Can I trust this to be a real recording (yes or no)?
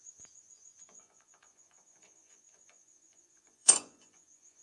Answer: no